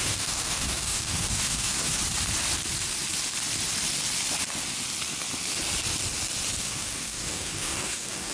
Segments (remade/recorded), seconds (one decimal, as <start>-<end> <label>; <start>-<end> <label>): 0.0-2.0 remade; 2.0-6.6 recorded; 6.6-8.3 remade

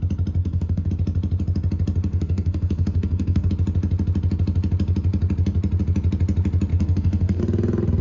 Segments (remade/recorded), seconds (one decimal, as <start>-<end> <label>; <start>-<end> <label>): 0.0-0.4 recorded; 0.4-0.9 remade; 0.9-2.1 recorded; 2.1-3.5 remade; 3.5-6.7 recorded; 6.7-7.4 remade; 7.4-8.0 recorded

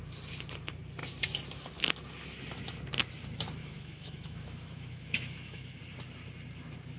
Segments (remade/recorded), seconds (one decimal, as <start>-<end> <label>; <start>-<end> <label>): 0.0-3.6 recorded; 3.6-5.8 remade; 5.8-7.0 recorded

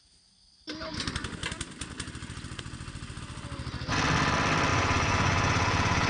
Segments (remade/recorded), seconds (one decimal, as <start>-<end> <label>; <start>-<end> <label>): 0.0-4.7 recorded; 4.7-6.1 remade

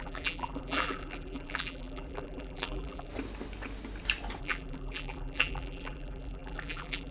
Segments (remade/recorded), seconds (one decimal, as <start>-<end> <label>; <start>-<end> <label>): 0.0-3.1 remade; 3.1-4.4 recorded; 4.4-7.1 remade

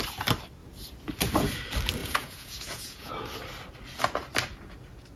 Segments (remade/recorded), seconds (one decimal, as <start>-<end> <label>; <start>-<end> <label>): 0.0-2.0 recorded; 2.0-3.1 remade; 3.1-5.2 recorded